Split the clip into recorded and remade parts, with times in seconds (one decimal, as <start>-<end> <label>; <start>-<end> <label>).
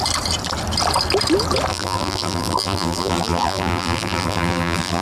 0.0-1.7 recorded; 1.7-5.0 remade